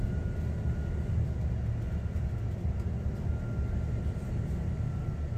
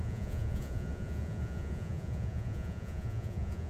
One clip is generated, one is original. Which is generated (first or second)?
second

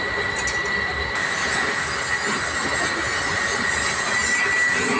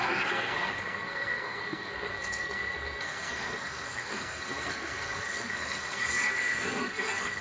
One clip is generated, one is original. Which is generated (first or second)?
second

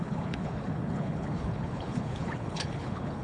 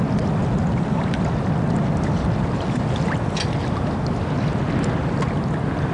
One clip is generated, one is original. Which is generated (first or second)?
first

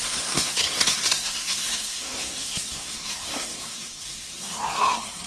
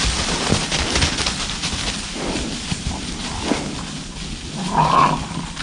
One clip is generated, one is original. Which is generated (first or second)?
first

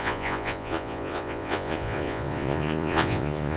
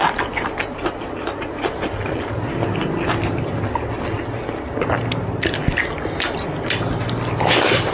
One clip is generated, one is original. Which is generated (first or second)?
first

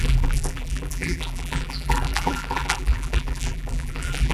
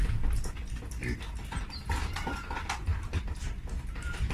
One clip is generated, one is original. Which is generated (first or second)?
first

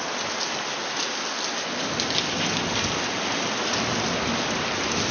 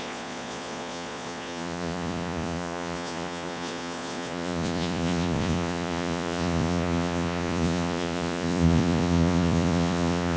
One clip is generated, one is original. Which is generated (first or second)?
second